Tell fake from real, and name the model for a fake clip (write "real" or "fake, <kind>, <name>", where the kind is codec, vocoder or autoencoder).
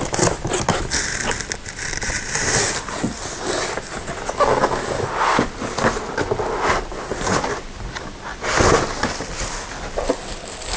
real